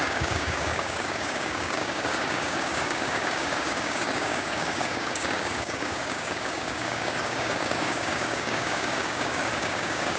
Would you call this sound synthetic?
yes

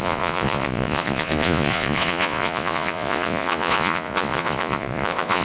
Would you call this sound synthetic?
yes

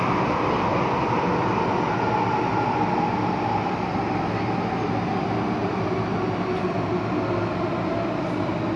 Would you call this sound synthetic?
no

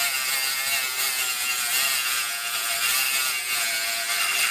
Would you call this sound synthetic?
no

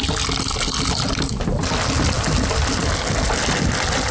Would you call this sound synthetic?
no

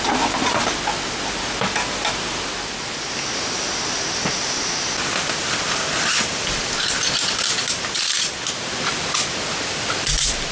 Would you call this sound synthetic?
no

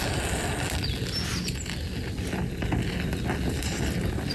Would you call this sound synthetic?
no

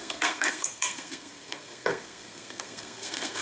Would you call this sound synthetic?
yes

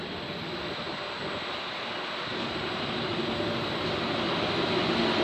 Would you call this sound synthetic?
yes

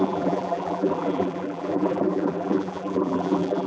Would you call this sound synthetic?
yes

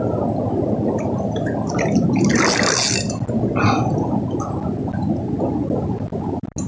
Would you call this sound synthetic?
no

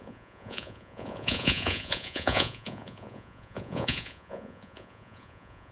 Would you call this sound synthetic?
yes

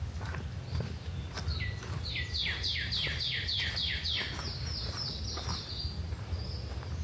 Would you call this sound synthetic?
no